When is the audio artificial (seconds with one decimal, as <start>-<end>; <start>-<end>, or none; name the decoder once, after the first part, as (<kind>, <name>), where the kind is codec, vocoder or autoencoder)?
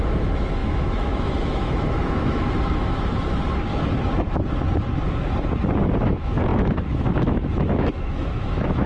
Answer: 0.0-3.1 (autoencoder, DAC-VAE); 6.0-8.9